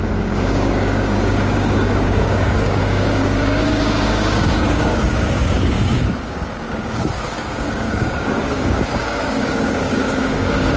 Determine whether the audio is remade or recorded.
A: remade